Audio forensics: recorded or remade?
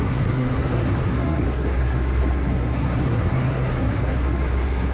remade